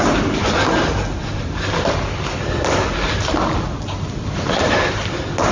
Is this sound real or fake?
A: real